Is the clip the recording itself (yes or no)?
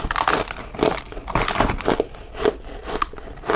yes